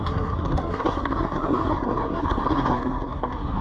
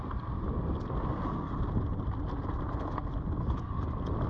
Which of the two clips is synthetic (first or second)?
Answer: first